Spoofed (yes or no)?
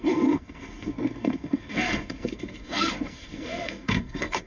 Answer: yes